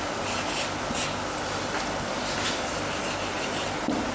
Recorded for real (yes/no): yes